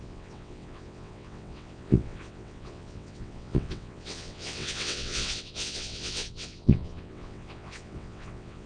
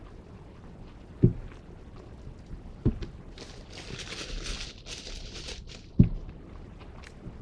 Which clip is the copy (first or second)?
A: first